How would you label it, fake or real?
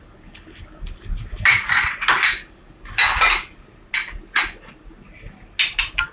real